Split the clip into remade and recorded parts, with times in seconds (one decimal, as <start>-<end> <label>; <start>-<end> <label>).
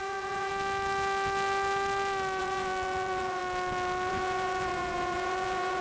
0.0-0.5 remade; 0.5-2.4 recorded; 2.4-3.4 remade; 3.4-4.1 recorded; 4.1-5.8 remade